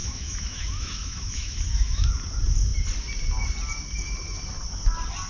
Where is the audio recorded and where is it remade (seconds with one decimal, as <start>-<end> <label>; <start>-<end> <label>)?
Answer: 0.0-2.1 remade; 2.1-5.3 recorded